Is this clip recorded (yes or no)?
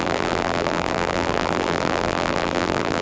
no